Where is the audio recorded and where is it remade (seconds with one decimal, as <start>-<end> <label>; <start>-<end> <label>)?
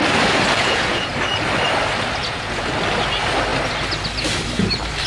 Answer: 0.0-0.6 recorded; 0.6-1.1 remade; 1.1-2.2 recorded; 2.2-2.7 remade; 2.7-5.1 recorded